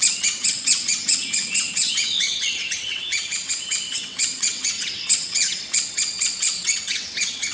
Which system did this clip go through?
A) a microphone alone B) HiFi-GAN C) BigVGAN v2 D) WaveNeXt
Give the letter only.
D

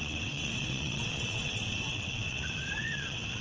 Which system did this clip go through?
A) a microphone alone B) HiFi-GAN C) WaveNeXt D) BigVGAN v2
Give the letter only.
C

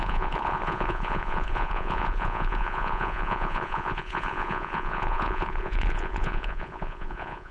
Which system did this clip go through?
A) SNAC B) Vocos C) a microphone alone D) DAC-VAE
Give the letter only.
B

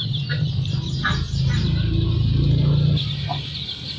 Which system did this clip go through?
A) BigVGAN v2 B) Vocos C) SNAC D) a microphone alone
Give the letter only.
D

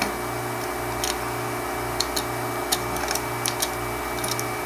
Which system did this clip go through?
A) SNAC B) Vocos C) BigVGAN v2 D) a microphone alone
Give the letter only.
D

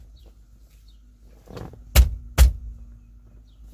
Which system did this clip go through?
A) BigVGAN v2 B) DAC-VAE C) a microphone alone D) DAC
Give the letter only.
C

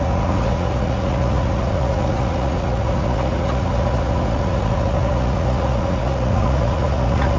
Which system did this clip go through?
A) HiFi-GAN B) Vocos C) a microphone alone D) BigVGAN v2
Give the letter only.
B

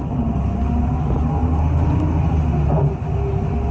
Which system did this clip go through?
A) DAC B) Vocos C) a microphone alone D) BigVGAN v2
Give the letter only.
C